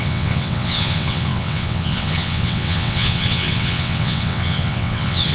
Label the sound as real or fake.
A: fake